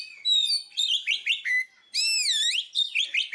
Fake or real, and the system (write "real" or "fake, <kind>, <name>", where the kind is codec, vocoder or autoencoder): real